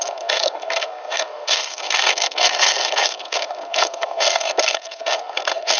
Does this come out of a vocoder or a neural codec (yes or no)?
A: yes